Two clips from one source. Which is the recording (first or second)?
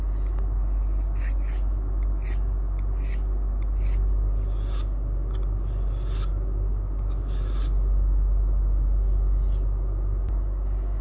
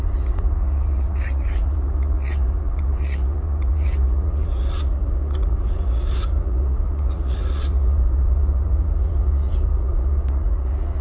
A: first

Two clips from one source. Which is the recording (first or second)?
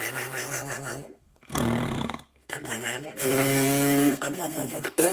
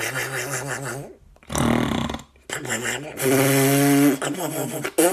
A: second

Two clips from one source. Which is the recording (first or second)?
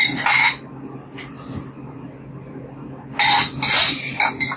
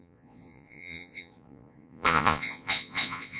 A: first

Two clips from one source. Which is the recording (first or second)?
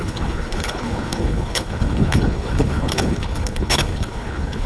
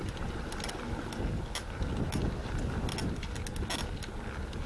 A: second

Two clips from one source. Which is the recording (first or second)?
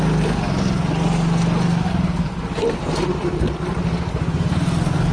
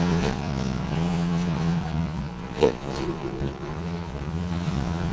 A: first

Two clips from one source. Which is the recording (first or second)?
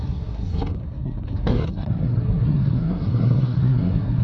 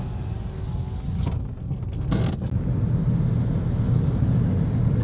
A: second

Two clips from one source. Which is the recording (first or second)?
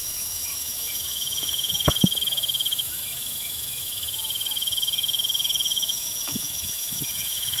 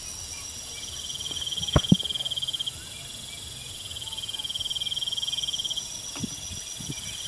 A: second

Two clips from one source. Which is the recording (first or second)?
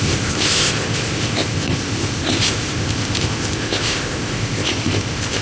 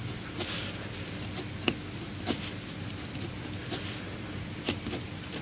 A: second